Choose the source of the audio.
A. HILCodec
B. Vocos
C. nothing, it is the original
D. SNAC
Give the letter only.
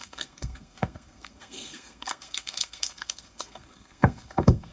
D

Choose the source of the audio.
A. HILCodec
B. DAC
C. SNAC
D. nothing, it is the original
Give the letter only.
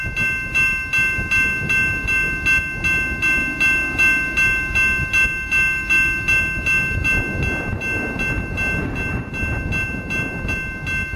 D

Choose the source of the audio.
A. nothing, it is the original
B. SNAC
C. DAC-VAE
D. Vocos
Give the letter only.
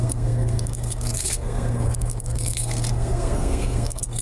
B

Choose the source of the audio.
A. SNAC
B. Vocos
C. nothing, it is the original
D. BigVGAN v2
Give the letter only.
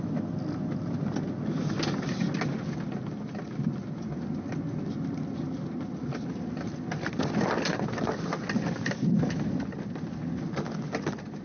C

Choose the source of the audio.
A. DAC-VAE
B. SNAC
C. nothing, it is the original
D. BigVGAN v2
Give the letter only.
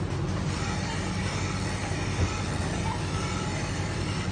C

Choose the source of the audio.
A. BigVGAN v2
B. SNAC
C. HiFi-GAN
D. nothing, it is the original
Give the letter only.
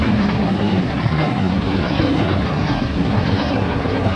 B